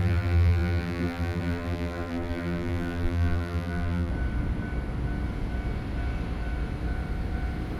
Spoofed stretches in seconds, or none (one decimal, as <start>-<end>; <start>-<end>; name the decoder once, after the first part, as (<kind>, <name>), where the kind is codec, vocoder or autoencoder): 0.0-4.1 (vocoder, BigVGAN v2)